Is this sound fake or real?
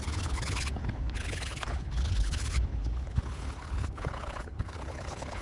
fake